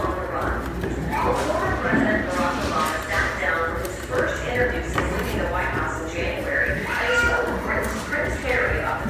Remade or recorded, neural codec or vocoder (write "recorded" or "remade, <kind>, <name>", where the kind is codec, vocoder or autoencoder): recorded